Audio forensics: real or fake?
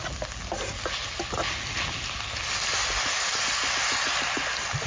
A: real